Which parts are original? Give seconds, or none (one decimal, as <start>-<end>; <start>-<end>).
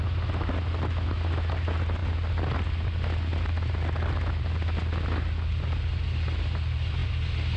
0.0-7.6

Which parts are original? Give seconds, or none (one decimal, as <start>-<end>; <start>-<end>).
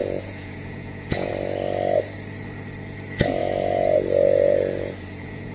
1.3-3.4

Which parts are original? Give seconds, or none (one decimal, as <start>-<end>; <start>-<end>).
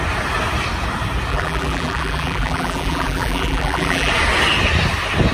0.0-1.3; 4.1-5.3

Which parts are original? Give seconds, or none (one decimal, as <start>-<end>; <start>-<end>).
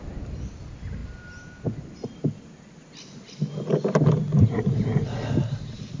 0.0-6.0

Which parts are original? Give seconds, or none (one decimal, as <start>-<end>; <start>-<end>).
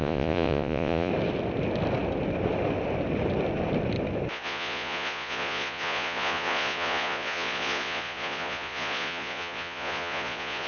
1.1-4.3